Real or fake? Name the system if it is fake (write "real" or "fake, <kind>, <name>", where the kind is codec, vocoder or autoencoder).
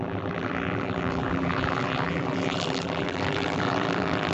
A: fake, vocoder, BigVGAN v2